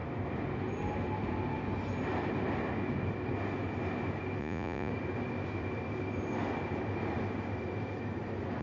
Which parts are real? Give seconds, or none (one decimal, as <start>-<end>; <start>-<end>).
0.0-4.4; 4.9-8.6